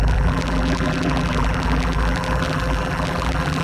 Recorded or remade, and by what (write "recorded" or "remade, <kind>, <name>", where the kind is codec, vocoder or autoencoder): remade, vocoder, BigVGAN v2